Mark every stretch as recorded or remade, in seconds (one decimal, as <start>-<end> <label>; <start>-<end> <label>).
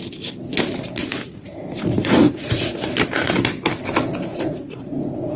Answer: 0.0-1.0 recorded; 1.0-2.9 remade; 2.9-4.3 recorded; 4.3-5.4 remade